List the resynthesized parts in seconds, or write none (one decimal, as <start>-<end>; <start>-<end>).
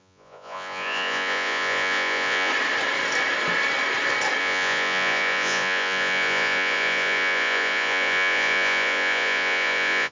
0.0-2.5; 4.4-10.1